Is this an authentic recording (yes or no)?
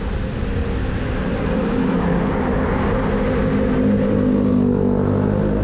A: yes